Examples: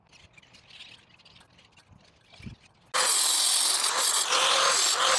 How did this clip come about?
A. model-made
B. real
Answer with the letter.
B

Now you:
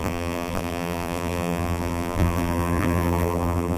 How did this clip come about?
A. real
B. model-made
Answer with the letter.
B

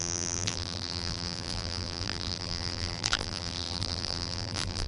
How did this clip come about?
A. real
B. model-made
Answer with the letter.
B